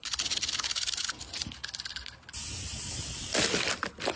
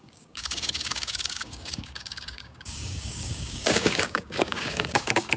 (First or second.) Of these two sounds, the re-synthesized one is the second